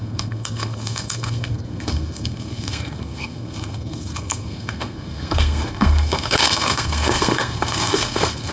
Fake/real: fake